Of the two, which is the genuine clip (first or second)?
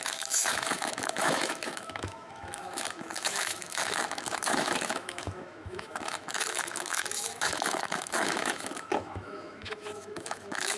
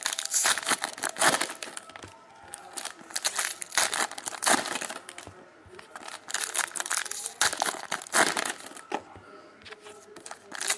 second